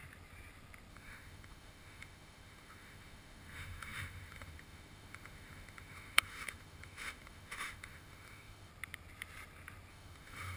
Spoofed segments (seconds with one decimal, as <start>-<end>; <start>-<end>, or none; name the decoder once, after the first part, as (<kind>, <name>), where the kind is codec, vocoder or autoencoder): 0.9-8.7 (autoencoder, DAC-VAE); 9.9-10.6